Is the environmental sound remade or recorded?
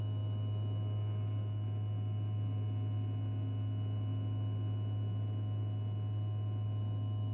recorded